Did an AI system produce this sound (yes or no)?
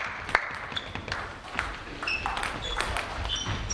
no